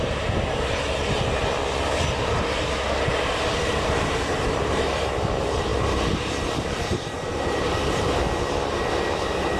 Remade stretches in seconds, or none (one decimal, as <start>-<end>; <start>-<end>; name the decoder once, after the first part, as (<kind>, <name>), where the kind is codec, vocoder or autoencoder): 0.0-1.4 (vocoder, BigVGAN v2); 3.3-9.6